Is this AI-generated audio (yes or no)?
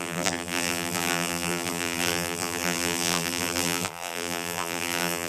yes